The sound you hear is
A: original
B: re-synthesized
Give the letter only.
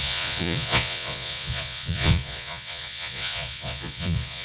B